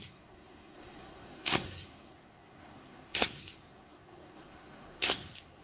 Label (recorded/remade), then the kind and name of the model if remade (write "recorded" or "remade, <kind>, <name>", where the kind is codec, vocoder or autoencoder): remade, codec, SNAC